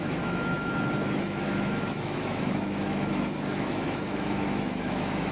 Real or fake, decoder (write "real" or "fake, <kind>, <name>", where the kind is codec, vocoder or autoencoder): fake, autoencoder, DAC-VAE